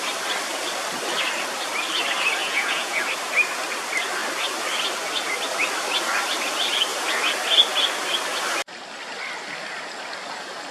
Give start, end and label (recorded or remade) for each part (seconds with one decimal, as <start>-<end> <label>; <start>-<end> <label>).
0.0-2.4 recorded; 2.4-3.0 remade; 3.0-10.7 recorded